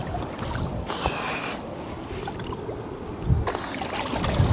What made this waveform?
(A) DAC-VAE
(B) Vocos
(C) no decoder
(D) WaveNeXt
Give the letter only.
C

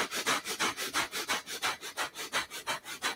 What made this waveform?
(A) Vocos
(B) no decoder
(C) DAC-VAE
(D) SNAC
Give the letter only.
B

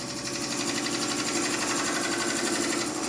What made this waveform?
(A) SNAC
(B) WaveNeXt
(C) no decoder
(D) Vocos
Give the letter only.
C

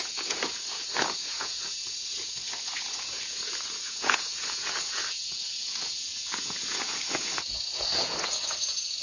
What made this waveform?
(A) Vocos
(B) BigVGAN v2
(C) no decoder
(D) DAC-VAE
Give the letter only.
A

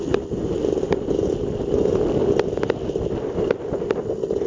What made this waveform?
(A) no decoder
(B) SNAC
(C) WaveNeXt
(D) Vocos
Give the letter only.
A